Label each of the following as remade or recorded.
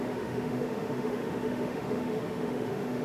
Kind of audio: remade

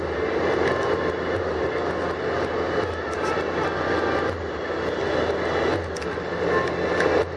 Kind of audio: recorded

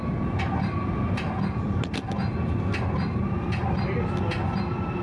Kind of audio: recorded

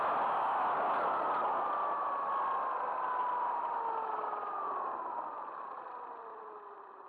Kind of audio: recorded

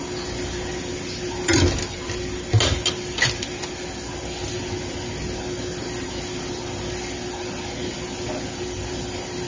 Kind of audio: recorded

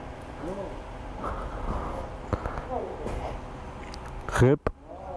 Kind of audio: recorded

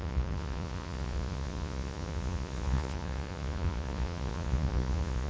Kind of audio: remade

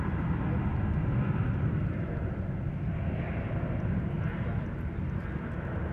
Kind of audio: recorded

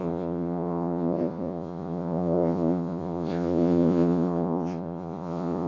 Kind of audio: remade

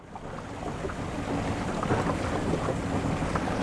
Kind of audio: recorded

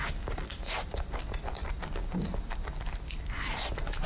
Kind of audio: recorded